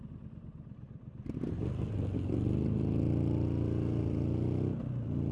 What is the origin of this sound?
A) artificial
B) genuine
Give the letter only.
B